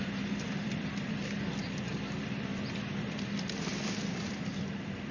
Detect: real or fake fake